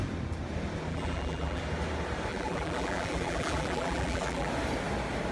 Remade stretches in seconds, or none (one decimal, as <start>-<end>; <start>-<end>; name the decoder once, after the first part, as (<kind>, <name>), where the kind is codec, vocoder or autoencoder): 0.9-1.6 (vocoder, BigVGAN v2); 2.3-4.5